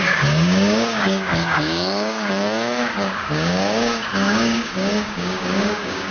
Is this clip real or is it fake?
fake